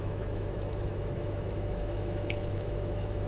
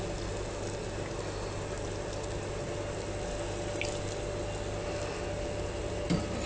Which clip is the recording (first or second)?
second